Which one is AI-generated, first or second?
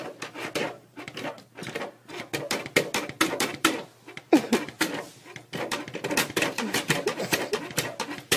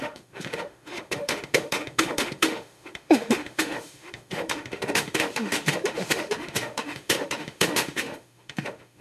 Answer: second